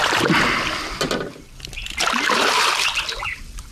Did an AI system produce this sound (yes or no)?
no